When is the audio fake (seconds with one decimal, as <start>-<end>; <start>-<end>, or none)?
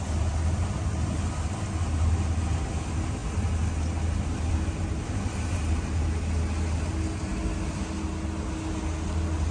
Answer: none